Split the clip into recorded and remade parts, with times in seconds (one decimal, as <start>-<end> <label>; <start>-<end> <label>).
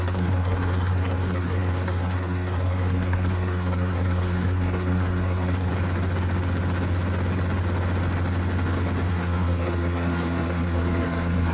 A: 0.0-5.7 remade; 5.7-9.1 recorded; 9.1-11.5 remade